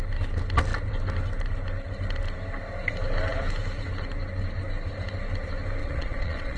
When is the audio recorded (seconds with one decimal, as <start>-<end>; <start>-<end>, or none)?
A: 0.0-5.8

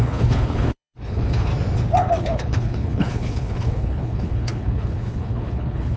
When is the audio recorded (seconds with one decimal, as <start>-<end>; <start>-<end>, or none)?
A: 1.5-2.1

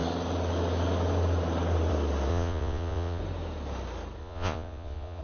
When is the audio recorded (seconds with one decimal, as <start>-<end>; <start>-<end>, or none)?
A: 0.0-2.3; 3.2-4.2

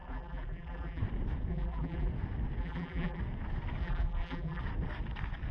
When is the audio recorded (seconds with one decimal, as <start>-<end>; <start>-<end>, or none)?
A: 1.0-1.5; 2.1-2.6; 3.2-3.8; 4.6-5.5

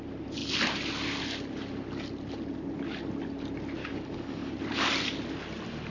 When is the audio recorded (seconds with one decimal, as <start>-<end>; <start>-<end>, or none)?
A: 0.0-3.8; 4.5-5.9

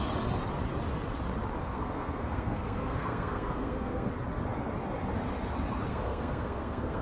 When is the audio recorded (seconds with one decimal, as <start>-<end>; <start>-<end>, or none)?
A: 0.0-1.6; 4.1-5.9

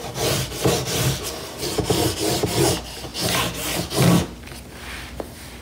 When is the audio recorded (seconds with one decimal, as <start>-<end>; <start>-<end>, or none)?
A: 0.0-5.6